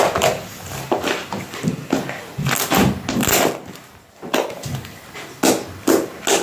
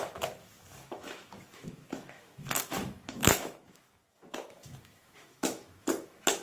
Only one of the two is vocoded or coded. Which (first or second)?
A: second